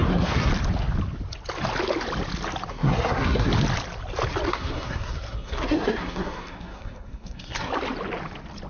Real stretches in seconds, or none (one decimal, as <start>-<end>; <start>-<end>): 0.5-2.7; 3.5-4.5; 7.7-8.7

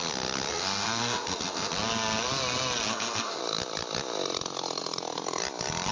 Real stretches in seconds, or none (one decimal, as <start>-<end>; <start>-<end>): 0.0-0.5; 1.7-2.9; 3.4-5.9

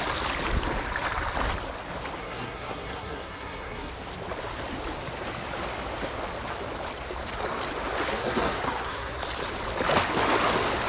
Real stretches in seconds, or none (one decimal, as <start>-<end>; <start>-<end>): 0.0-2.2; 3.9-8.1; 9.2-10.9

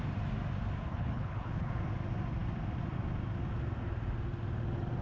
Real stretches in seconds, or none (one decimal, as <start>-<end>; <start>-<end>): 0.0-0.9; 1.7-5.0